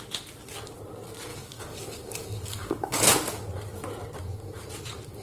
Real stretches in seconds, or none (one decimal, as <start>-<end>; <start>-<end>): 0.0-1.3; 3.1-5.2